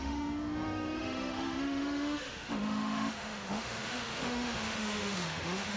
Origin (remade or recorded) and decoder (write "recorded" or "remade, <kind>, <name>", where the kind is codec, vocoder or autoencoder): remade, autoencoder, DAC-VAE